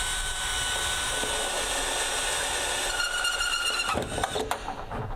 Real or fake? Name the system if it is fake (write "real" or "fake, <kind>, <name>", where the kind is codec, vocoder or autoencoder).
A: real